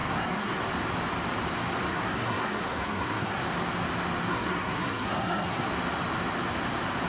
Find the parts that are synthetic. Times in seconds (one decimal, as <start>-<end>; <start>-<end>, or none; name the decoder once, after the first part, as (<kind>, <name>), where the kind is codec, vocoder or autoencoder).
0.0-0.6 (codec, SNAC); 1.9-3.4; 4.3-5.7